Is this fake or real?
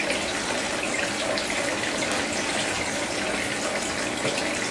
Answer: real